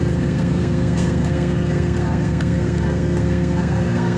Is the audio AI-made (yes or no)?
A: yes